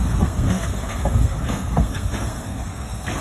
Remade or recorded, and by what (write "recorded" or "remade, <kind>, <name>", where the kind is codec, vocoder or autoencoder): remade, codec, SNAC